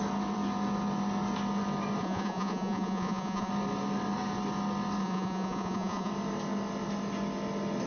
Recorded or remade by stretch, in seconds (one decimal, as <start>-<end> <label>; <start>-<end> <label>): 0.0-2.0 recorded; 2.0-3.5 remade; 3.5-5.0 recorded; 5.0-6.1 remade; 6.1-7.9 recorded